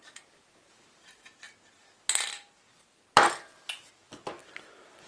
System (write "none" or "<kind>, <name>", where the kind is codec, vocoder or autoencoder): none